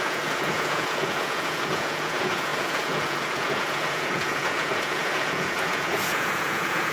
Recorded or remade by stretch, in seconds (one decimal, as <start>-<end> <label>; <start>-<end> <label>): 0.0-6.9 remade